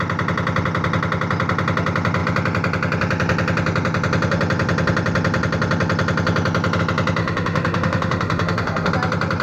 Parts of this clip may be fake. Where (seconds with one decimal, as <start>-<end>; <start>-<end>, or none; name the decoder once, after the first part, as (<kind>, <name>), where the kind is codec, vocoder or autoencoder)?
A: 7.2-8.9 (autoencoder, DAC-VAE)